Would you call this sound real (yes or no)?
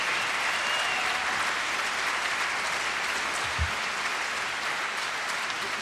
yes